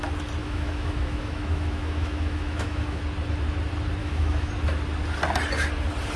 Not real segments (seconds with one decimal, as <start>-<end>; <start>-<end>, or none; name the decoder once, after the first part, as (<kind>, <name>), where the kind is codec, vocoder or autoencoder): 0.4-3.0 (autoencoder, DAC-VAE); 4.0-4.5